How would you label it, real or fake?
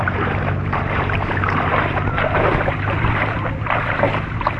fake